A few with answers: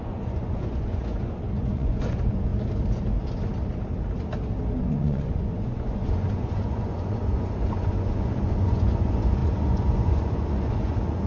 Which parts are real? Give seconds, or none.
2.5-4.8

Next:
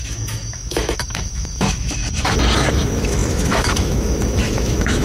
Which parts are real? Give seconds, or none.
2.0-2.7

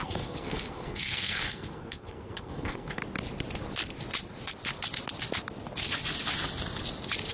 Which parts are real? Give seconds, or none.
3.0-7.3

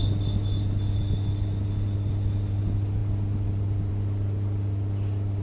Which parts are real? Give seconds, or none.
0.0-5.4

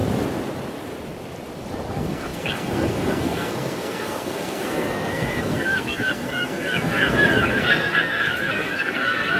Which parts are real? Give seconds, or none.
0.0-1.9

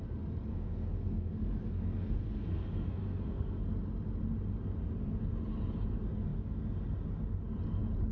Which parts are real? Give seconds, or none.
0.0-0.5; 3.6-8.1

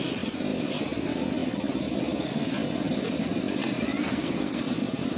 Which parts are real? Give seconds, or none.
0.0-4.0; 4.6-5.2